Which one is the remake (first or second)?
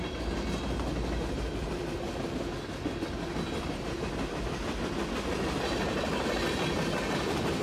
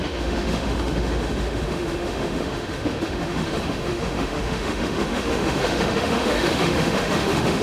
second